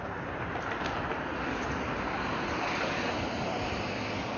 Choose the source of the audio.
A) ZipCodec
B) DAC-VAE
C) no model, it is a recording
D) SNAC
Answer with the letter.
C